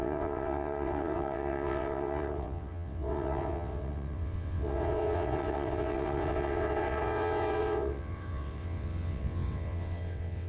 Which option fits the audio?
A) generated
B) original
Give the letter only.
A